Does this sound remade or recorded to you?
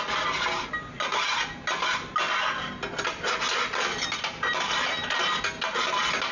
recorded